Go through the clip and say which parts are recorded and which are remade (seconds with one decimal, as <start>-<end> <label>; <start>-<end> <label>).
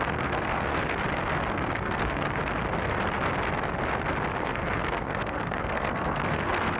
0.0-0.7 remade; 0.7-1.5 recorded; 1.5-2.4 remade; 2.4-4.4 recorded; 4.4-6.8 remade